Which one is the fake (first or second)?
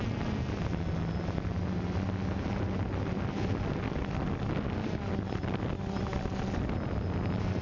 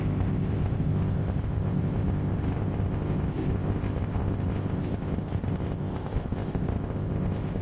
second